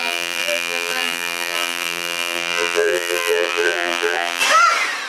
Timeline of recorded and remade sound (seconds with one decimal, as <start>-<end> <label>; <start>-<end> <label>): 0.0-4.4 remade; 4.4-5.1 recorded